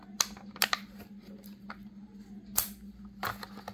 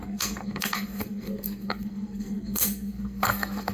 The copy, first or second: second